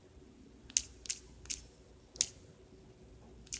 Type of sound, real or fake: real